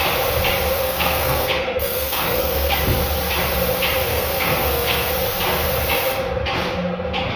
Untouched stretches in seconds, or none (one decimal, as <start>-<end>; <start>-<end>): 0.0-0.8; 2.8-4.1; 5.1-7.4